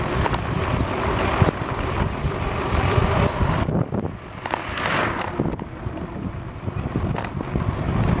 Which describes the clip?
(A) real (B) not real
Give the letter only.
B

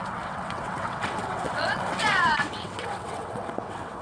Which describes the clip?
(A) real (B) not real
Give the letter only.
B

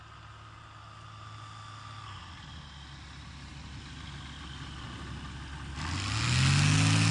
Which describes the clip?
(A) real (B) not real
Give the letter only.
A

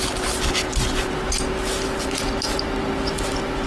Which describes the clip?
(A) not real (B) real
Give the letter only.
B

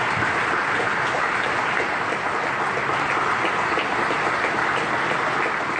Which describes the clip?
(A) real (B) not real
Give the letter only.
A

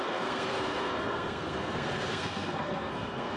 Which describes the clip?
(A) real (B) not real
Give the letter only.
B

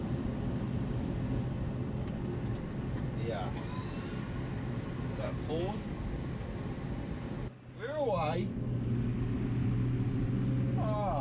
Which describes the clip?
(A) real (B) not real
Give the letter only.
A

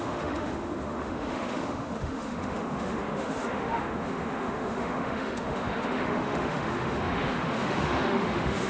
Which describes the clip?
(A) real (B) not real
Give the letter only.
B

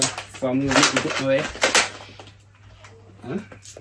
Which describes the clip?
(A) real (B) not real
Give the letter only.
A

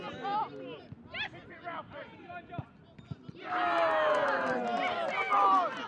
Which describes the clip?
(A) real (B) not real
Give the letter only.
A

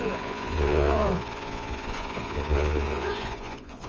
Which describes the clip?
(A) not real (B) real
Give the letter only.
A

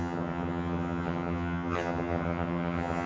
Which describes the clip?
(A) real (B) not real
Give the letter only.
B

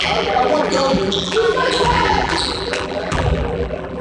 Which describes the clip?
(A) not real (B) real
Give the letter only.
A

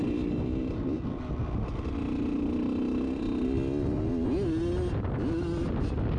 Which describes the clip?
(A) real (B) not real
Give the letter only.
A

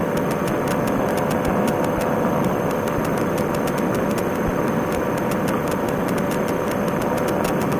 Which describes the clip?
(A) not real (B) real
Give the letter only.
B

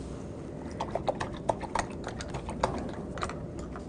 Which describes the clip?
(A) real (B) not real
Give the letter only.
A